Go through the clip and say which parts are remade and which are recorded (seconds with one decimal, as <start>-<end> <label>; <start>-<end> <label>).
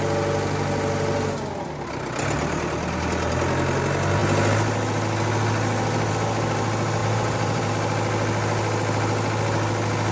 0.0-7.0 recorded; 7.0-7.7 remade; 7.7-10.1 recorded